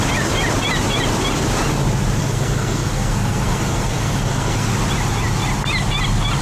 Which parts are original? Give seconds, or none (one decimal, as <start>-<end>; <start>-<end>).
0.0-2.2; 4.7-6.4